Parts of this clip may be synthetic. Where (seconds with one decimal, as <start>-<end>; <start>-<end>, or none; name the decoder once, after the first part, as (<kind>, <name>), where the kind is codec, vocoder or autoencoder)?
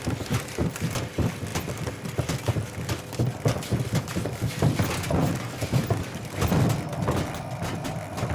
none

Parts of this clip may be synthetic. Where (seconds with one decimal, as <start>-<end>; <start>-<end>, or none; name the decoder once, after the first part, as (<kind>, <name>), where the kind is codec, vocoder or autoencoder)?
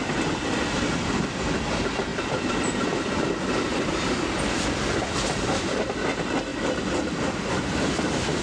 2.1-5.1 (vocoder, BigVGAN v2)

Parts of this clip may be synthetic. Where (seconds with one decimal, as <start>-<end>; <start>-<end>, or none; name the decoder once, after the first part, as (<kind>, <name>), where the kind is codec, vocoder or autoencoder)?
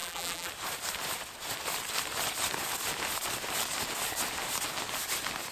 0.0-0.5 (vocoder, BigVGAN v2)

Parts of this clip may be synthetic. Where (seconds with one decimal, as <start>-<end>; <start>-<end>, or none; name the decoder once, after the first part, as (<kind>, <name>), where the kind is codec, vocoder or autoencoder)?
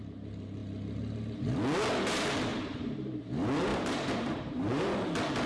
2.5-3.2 (vocoder, BigVGAN v2); 3.7-4.8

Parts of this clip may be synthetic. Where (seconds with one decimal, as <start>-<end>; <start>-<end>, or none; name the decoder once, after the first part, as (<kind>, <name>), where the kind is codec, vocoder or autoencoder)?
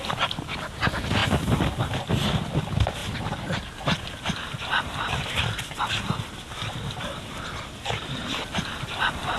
3.0-5.8 (vocoder, BigVGAN v2)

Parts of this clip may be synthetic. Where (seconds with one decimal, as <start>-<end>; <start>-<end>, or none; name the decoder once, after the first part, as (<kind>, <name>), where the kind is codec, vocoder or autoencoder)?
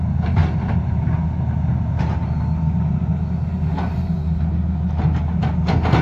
none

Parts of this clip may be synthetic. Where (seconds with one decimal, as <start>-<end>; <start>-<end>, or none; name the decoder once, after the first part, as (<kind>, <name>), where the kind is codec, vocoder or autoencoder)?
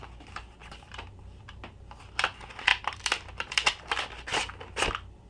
0.6-1.6 (vocoder, BigVGAN v2); 2.7-4.0